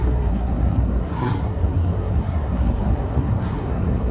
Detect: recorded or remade remade